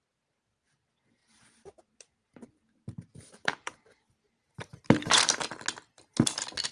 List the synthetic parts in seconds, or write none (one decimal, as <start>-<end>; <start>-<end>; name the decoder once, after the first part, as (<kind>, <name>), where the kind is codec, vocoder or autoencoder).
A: 1.2-5.2 (vocoder, BigVGAN v2)